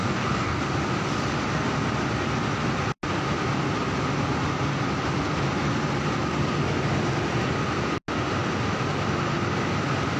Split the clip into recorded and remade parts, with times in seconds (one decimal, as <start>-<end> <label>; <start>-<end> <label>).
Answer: 0.0-0.6 remade; 0.6-10.2 recorded